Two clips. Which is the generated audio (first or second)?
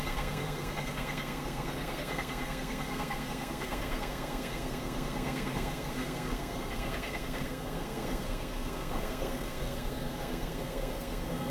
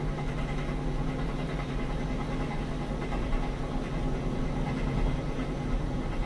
first